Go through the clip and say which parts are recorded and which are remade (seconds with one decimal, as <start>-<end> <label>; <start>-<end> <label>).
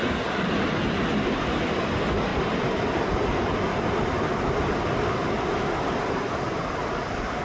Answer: 0.0-7.4 recorded